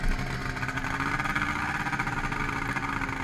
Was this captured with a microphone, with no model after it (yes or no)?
yes